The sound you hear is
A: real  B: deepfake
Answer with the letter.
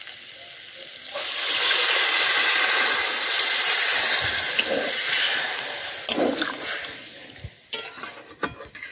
A